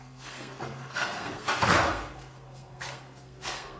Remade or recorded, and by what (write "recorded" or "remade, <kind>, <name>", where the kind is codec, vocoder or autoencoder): remade, codec, SNAC